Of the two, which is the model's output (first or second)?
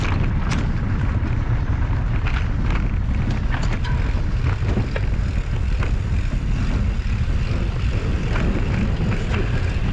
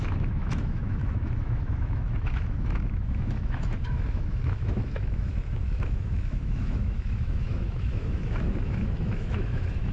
second